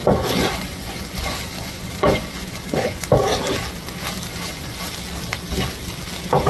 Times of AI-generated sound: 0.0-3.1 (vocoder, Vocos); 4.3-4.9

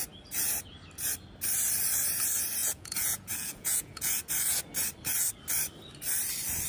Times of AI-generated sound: 2.6-4.2 (vocoder, Vocos)